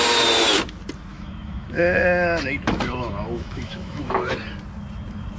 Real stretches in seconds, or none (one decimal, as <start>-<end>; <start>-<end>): 0.0-1.1; 4.3-5.4